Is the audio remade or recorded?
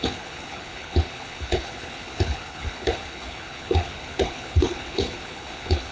remade